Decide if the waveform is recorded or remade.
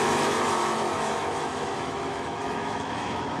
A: remade